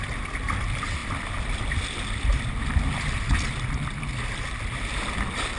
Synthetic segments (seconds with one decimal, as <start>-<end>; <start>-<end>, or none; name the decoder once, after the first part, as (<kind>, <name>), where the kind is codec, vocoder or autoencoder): none